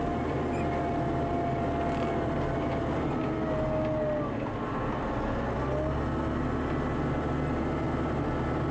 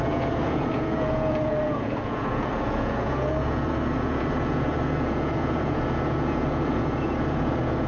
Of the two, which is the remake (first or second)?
second